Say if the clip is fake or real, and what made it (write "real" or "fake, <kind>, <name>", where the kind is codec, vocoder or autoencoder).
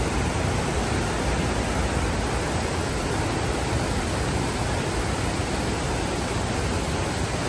real